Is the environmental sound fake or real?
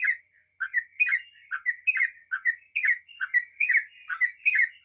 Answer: real